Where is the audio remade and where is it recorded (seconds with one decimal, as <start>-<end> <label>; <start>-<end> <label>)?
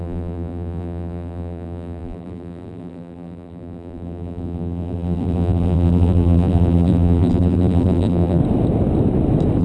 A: 0.0-8.4 remade; 8.4-9.6 recorded